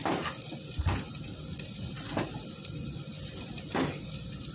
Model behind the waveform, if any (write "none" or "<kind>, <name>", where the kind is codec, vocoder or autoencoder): none